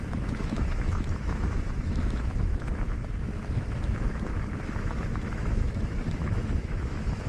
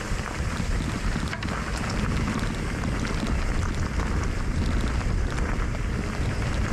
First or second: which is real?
second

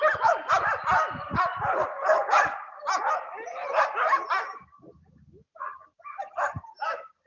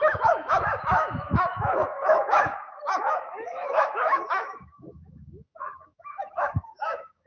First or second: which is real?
first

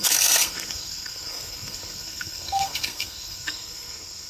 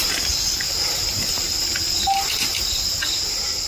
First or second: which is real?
second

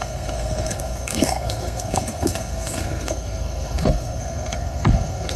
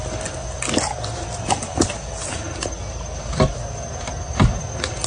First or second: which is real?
second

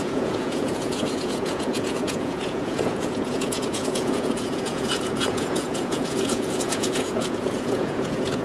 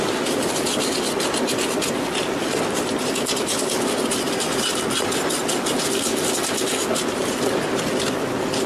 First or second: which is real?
second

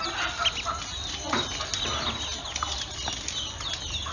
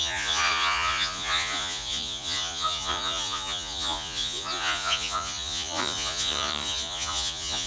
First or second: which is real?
first